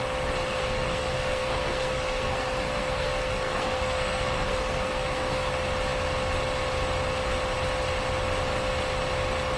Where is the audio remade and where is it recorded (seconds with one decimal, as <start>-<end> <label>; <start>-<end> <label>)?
0.0-0.5 recorded; 0.5-5.5 remade; 5.5-9.6 recorded

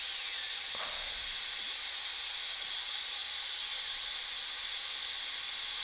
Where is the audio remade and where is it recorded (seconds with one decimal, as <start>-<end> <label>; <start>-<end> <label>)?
0.0-5.8 recorded

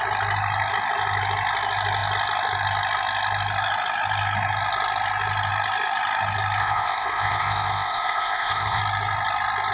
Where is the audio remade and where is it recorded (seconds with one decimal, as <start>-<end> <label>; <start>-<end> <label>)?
0.0-6.6 recorded; 6.6-8.8 remade; 8.8-9.7 recorded

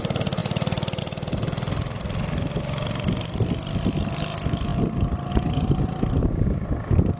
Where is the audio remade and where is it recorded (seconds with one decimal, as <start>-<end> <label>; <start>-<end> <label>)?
0.0-7.2 recorded